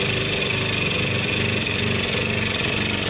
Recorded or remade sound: remade